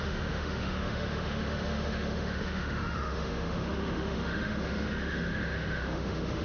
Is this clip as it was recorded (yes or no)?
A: no